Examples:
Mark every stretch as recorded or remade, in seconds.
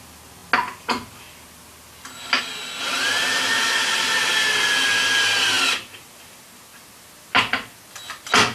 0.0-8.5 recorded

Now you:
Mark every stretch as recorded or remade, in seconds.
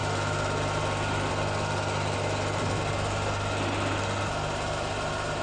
0.0-5.4 recorded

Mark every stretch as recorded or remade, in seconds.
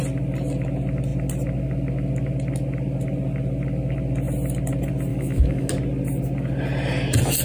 0.0-5.1 recorded; 5.1-5.7 remade; 5.7-7.4 recorded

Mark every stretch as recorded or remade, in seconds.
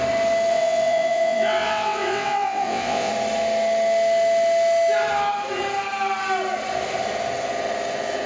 0.0-0.5 recorded; 0.5-3.1 remade; 3.1-8.3 recorded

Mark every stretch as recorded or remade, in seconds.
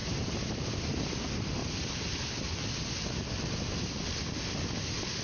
0.0-0.9 remade; 0.9-1.6 recorded; 1.6-2.6 remade; 2.6-5.2 recorded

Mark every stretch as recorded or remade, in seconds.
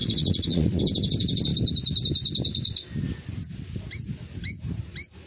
0.0-0.8 remade; 0.8-5.3 recorded